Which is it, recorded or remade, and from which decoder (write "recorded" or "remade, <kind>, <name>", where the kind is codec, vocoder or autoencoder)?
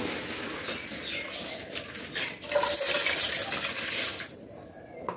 recorded